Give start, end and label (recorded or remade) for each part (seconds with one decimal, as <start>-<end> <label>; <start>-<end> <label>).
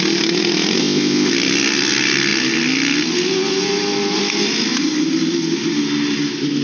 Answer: 0.0-0.8 recorded; 0.8-1.3 remade; 1.3-6.6 recorded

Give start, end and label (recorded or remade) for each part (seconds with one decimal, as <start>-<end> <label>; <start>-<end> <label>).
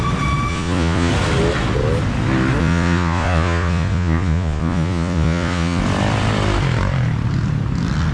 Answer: 0.0-0.5 recorded; 0.5-1.1 remade; 1.1-2.6 recorded; 2.6-5.8 remade; 5.8-8.1 recorded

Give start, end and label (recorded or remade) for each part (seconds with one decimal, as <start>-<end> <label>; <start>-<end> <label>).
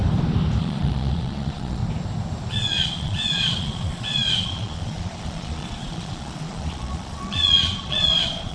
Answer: 0.0-0.6 recorded; 0.6-1.8 remade; 1.8-2.5 recorded; 2.5-8.5 remade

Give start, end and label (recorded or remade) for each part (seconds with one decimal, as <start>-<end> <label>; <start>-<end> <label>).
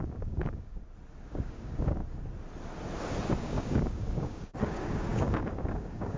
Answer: 0.0-0.8 remade; 0.8-1.3 recorded; 1.3-2.0 remade; 2.0-3.4 recorded; 3.4-6.2 remade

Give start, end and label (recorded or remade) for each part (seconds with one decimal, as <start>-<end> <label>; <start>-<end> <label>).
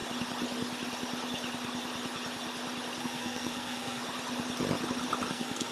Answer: 0.0-3.0 recorded; 3.0-4.0 remade; 4.0-5.3 recorded; 5.3-5.7 remade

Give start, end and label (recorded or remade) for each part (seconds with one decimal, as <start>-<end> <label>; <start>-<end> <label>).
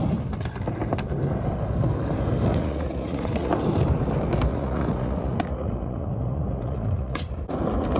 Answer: 0.0-2.5 recorded; 2.5-3.5 remade; 3.5-4.5 recorded; 4.5-7.3 remade; 7.3-8.0 recorded